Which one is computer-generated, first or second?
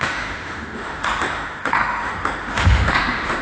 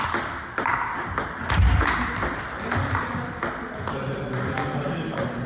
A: first